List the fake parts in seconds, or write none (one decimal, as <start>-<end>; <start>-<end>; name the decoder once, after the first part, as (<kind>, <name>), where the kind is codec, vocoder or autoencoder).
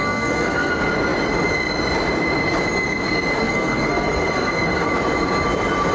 0.0-0.7 (codec, SNAC); 3.4-4.9